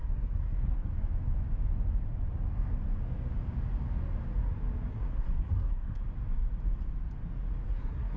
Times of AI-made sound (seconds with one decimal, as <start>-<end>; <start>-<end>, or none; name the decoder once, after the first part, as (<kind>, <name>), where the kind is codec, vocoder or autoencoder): 0.0-0.9 (codec, SNAC); 4.9-6.0; 7.7-8.2